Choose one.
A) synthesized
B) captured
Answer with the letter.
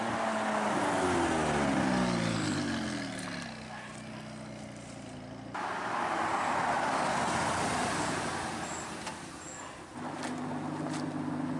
B